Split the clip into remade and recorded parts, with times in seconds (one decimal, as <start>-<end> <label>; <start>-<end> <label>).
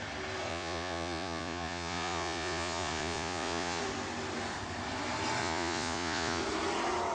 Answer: 0.0-0.5 recorded; 0.5-3.8 remade; 3.8-5.4 recorded; 5.4-6.4 remade; 6.4-7.1 recorded